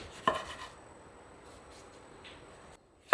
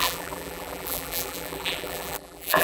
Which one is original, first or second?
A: first